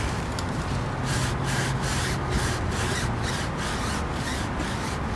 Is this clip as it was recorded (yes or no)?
yes